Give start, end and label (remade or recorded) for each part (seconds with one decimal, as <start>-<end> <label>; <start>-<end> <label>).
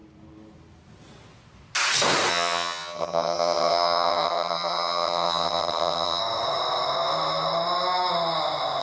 0.0-2.3 recorded; 2.3-6.2 remade; 6.2-8.8 recorded